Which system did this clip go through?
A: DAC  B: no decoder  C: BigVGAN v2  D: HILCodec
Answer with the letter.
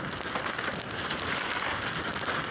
B